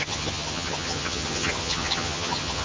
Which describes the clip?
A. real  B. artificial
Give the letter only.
B